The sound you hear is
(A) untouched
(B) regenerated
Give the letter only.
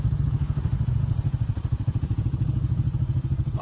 B